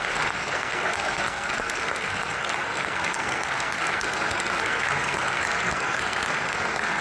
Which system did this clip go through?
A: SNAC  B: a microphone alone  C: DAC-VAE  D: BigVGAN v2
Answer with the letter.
A